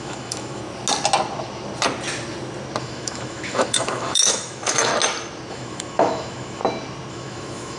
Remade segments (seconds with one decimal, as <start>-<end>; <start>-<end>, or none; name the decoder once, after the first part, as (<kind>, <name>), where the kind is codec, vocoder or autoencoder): 0.0-0.6 (autoencoder, DAC-VAE); 2.8-4.9; 5.5-6.6; 7.1-7.8